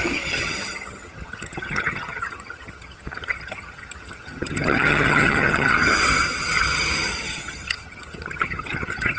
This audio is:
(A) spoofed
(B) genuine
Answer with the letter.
A